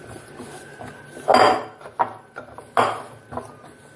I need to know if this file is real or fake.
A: real